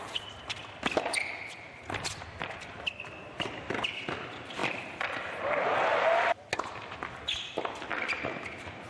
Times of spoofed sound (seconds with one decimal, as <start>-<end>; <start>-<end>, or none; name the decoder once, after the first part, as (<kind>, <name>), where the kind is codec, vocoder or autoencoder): none